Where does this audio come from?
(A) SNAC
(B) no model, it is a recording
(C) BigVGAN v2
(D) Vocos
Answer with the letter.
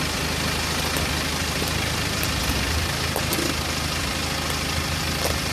B